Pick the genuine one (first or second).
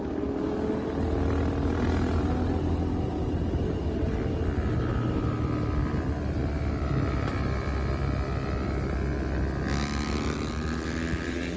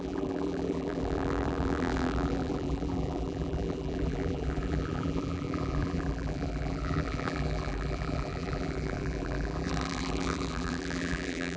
first